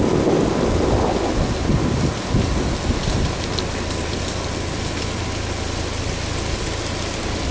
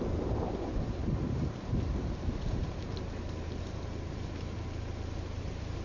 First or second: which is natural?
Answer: first